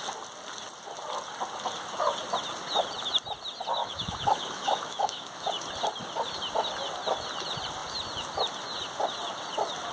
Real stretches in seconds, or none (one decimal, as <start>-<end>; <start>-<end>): 0.0-3.8; 5.5-9.9